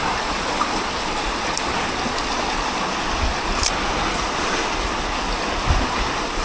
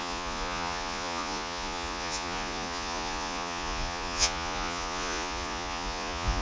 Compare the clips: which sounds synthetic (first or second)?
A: second